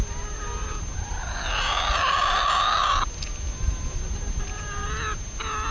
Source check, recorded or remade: recorded